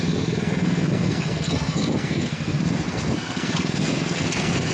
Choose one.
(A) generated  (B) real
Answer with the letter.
A